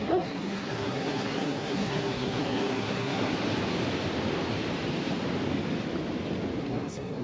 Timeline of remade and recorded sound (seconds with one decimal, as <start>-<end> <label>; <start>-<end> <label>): 0.0-3.3 remade; 3.3-6.6 recorded; 6.6-7.2 remade